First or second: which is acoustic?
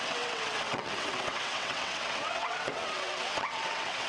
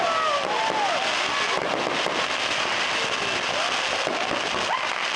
second